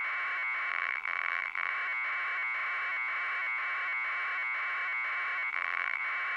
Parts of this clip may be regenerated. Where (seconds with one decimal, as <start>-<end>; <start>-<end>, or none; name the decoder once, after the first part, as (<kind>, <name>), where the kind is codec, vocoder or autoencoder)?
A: 0.7-1.7 (vocoder, BigVGAN v2); 5.5-6.0